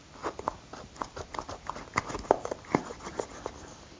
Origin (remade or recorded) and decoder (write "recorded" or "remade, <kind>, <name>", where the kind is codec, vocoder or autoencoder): recorded